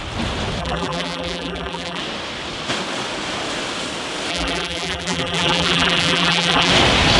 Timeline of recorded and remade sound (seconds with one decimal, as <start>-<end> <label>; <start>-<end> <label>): 0.0-0.6 recorded; 0.6-2.0 remade; 2.0-4.3 recorded; 4.3-6.7 remade; 6.7-7.2 recorded